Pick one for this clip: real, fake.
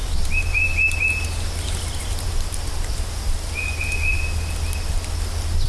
real